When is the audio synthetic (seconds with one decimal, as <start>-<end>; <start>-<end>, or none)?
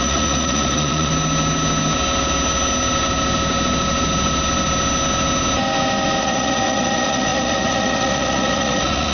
0.0-1.1; 6.2-9.1